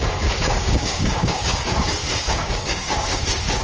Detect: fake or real fake